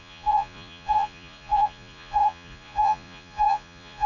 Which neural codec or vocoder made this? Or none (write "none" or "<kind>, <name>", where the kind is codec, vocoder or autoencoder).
vocoder, Vocos